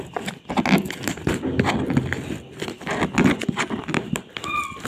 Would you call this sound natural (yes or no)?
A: yes